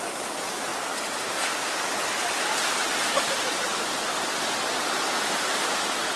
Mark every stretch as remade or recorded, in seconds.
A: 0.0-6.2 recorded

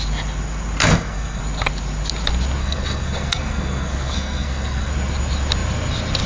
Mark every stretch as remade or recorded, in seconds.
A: 0.0-0.8 recorded; 0.8-1.4 remade; 1.4-2.6 recorded; 2.6-4.9 remade; 4.9-6.3 recorded

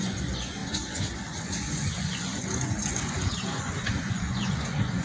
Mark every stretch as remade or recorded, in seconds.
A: 0.0-5.0 remade

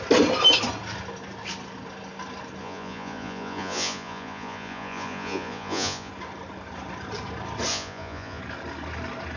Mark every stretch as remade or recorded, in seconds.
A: 0.0-2.6 recorded; 2.6-6.1 remade; 6.1-7.7 recorded; 7.7-8.4 remade; 8.4-9.4 recorded

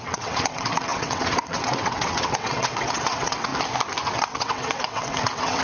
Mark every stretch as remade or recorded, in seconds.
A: 0.0-3.5 remade; 3.5-4.1 recorded; 4.1-5.6 remade

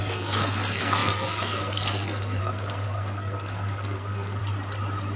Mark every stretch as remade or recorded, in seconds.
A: 0.0-4.4 remade; 4.4-5.2 recorded

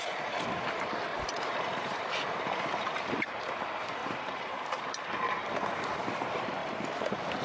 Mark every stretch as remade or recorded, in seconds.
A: 0.0-1.1 recorded; 1.1-3.5 remade; 3.5-4.0 recorded; 4.0-4.5 remade; 4.5-6.6 recorded; 6.6-7.4 remade

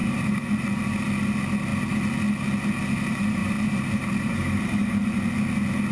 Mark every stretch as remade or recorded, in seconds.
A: 0.0-0.8 remade; 0.8-3.4 recorded; 3.4-5.0 remade; 5.0-5.9 recorded